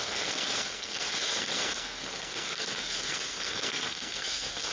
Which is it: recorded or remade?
remade